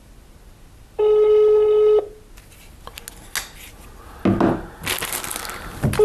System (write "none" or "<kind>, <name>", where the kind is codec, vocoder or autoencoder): none